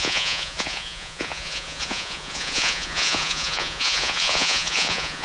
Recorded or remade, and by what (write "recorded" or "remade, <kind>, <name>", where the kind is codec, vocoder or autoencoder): remade, vocoder, Vocos